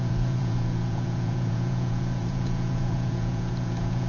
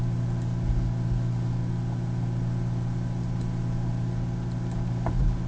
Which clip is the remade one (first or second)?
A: first